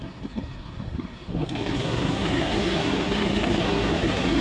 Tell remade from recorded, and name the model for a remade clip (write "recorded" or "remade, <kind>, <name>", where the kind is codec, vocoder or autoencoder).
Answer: remade, codec, SNAC